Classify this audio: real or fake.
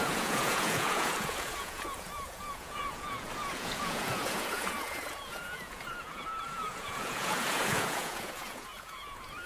fake